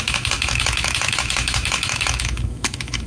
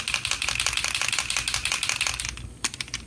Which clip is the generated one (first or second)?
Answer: first